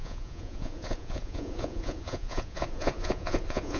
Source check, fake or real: fake